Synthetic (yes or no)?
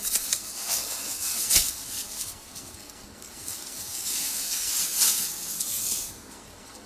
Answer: yes